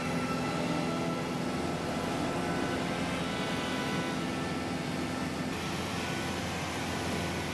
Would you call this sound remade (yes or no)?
no